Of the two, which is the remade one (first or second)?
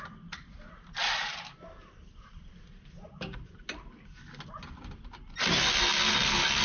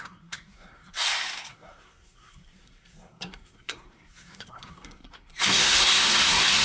second